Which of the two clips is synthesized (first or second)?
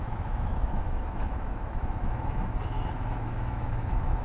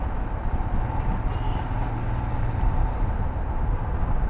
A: first